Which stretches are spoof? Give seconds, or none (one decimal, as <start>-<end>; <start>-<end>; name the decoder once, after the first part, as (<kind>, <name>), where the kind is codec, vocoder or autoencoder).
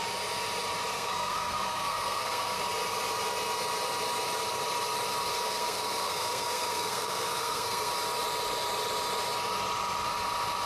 0.9-2.6 (codec, SNAC); 5.3-7.9